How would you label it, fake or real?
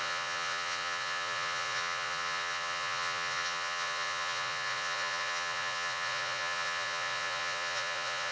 fake